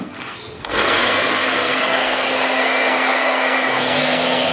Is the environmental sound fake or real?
fake